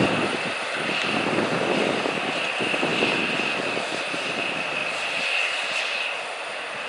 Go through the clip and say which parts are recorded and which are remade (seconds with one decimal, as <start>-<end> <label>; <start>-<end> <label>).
0.0-6.9 recorded